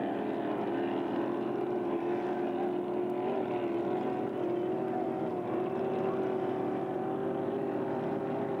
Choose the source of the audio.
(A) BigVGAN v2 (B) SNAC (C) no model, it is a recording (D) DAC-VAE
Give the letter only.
C